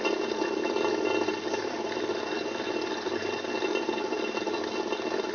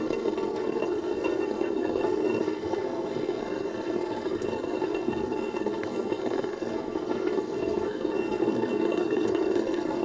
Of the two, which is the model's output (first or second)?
second